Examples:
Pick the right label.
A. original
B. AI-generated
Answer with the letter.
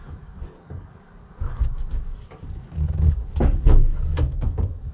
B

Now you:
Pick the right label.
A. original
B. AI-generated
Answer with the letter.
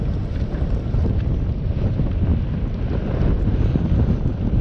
A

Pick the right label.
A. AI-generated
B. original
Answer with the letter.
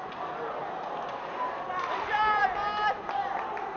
B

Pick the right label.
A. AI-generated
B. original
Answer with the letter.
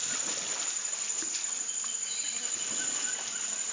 B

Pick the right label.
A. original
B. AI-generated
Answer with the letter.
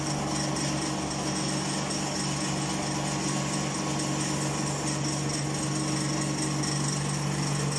A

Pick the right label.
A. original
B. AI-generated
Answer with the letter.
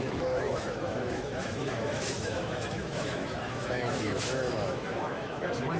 B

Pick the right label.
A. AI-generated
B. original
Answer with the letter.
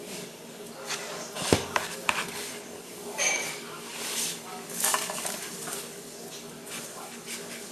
A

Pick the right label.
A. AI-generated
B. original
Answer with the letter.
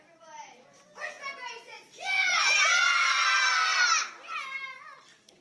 B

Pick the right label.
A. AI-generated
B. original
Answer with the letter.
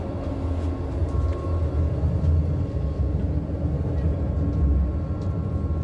B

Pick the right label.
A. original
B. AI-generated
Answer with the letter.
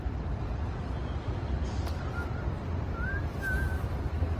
B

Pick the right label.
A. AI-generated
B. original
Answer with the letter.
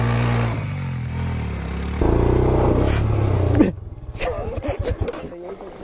B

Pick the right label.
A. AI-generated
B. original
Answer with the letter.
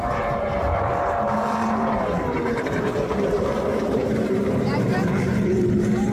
A